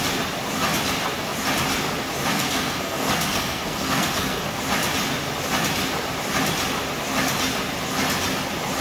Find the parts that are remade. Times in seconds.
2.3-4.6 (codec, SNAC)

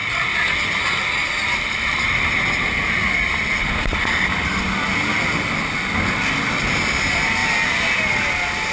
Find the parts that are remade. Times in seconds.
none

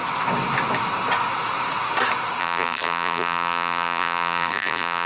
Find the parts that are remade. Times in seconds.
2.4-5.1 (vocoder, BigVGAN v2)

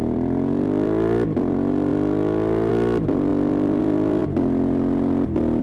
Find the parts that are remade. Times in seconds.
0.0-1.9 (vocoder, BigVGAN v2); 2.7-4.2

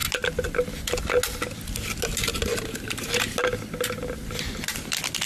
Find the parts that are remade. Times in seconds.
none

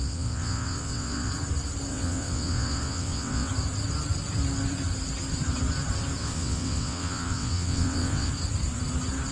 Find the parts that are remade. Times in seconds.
0.0-1.3 (vocoder, WaveNeXt); 1.9-3.5; 6.2-8.3

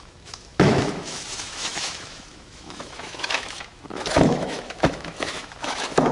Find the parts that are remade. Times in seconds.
0.0-6.1 (autoencoder, DAC-VAE)